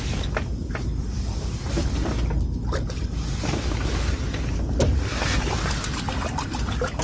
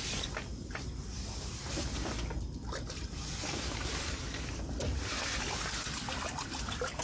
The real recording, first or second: first